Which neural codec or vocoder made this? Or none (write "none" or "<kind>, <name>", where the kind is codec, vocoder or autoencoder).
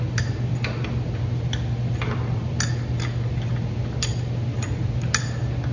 none